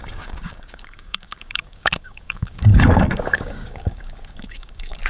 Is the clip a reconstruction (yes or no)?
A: yes